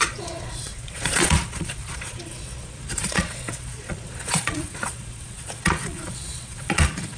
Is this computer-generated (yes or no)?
yes